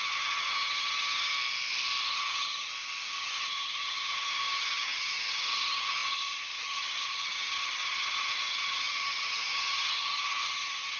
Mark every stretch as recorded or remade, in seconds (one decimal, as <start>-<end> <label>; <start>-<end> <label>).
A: 0.0-1.3 remade; 1.3-2.0 recorded; 2.0-2.7 remade; 2.7-3.2 recorded; 3.2-11.0 remade